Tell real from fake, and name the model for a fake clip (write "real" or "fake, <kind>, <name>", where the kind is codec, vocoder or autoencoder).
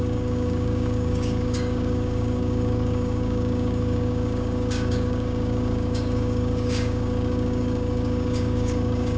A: fake, codec, DAC